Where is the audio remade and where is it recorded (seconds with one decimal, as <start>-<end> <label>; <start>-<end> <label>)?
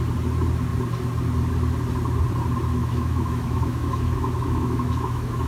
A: 0.0-2.8 recorded; 2.8-5.5 remade